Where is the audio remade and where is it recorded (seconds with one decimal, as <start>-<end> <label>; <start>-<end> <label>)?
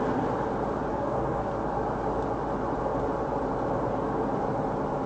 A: 0.0-0.9 recorded; 0.9-1.5 remade; 1.5-5.1 recorded